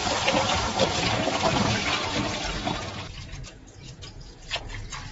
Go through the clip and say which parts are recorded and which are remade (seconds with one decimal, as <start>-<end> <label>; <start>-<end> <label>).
0.0-5.1 recorded